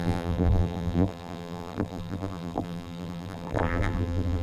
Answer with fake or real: fake